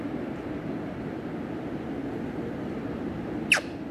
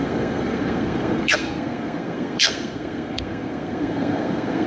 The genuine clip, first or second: first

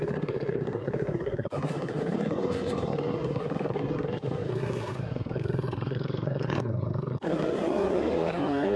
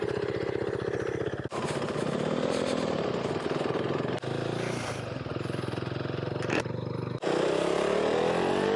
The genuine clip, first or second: second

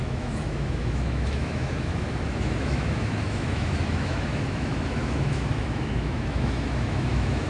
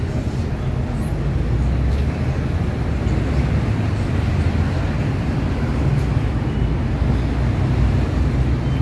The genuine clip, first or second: second